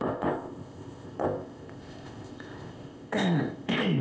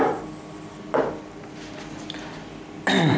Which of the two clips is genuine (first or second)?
second